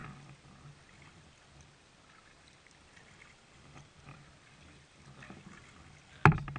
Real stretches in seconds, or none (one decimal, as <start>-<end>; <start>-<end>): 0.0-6.6